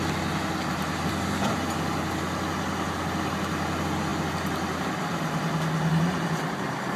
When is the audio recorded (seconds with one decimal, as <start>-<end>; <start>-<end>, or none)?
0.0-7.0